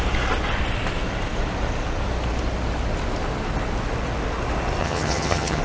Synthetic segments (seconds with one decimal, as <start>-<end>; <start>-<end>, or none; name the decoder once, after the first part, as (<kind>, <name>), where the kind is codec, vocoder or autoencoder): 4.8-5.6 (vocoder, HiFi-GAN)